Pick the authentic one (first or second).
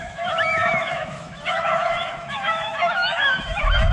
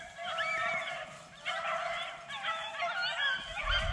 second